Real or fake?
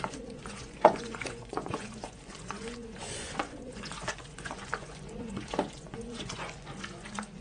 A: fake